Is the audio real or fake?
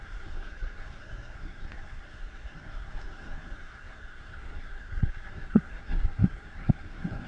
fake